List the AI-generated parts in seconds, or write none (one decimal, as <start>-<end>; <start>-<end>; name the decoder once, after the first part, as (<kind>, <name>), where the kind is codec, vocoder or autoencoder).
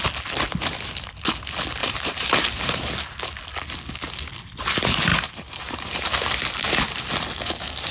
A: 1.8-2.8 (vocoder, BigVGAN v2); 5.1-6.1